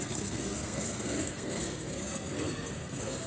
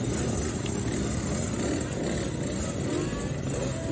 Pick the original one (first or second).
second